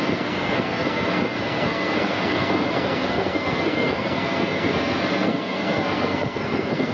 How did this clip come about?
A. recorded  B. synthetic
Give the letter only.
B